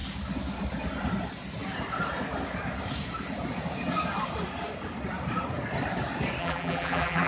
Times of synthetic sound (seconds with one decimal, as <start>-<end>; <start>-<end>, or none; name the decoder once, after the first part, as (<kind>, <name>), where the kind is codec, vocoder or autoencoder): 6.4-7.3 (vocoder, BigVGAN v2)